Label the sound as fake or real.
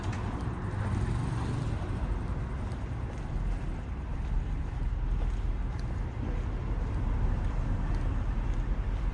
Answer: real